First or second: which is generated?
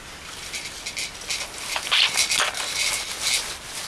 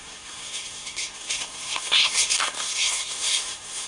second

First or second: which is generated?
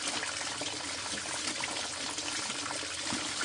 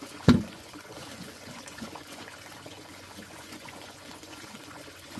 second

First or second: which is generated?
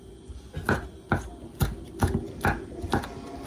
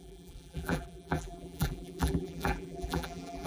second